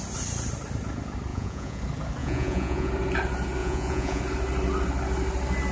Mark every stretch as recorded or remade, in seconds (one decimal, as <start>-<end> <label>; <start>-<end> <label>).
0.0-1.3 recorded; 1.3-1.8 remade; 1.8-2.2 recorded; 2.2-2.9 remade; 2.9-3.6 recorded; 3.6-4.2 remade; 4.2-5.7 recorded